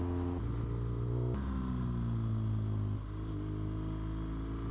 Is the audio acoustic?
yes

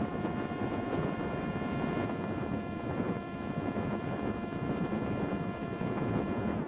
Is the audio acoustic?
no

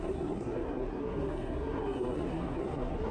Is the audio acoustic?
no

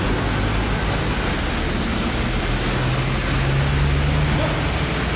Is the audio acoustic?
yes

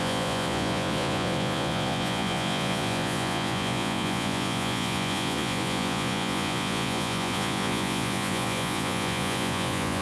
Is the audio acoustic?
no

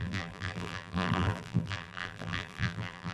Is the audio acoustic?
no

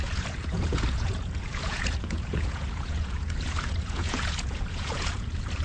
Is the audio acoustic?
no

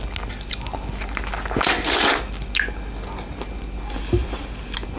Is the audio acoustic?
yes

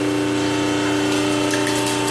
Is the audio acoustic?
yes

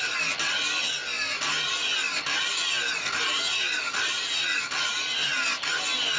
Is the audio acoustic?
yes